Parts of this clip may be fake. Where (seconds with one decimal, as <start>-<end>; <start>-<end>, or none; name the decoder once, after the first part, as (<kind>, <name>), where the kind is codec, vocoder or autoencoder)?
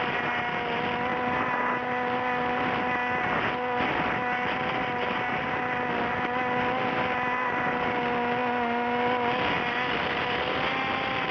none